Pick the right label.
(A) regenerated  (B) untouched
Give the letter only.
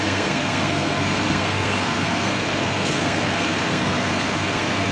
A